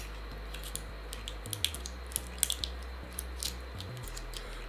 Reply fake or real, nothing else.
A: real